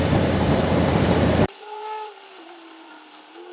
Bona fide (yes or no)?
no